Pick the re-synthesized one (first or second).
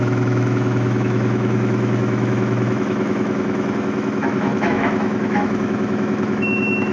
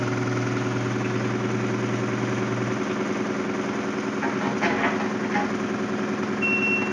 first